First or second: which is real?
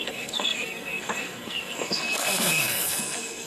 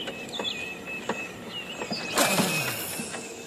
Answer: second